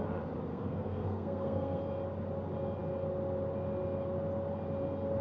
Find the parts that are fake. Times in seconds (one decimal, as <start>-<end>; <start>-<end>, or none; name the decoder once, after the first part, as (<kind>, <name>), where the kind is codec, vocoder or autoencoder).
0.5-1.8 (codec, SNAC)